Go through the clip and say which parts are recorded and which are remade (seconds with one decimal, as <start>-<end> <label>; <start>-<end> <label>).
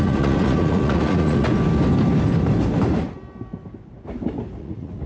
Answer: 0.0-1.5 remade; 1.5-4.6 recorded; 4.6-5.1 remade